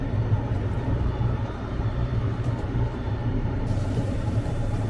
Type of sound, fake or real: fake